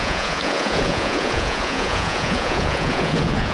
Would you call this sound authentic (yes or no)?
no